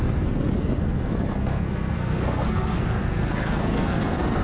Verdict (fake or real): fake